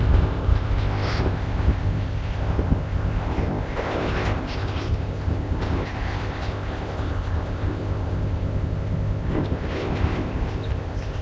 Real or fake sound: fake